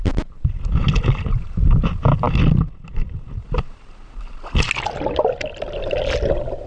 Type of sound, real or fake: real